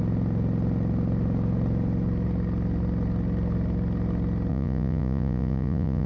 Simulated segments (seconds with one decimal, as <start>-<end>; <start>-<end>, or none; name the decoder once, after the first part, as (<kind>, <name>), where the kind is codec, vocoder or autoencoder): 4.5-6.1 (vocoder, Vocos)